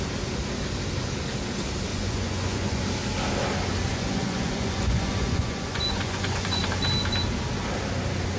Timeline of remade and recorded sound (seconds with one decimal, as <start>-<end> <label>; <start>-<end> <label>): 0.0-1.9 recorded; 1.9-2.8 remade; 2.8-3.9 recorded; 3.9-6.6 remade; 6.6-8.4 recorded